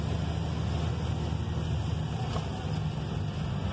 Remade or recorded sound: recorded